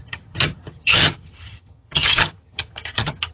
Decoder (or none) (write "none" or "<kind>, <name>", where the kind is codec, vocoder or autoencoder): vocoder, HiFi-GAN